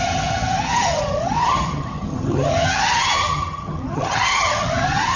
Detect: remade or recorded remade